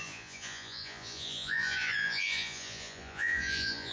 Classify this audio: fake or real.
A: fake